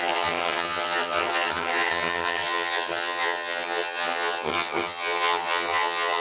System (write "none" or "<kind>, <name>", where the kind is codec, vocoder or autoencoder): vocoder, HiFi-GAN